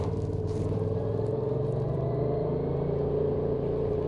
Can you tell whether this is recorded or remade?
remade